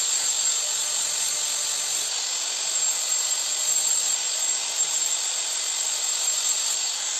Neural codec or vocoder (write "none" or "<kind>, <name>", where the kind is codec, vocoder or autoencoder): none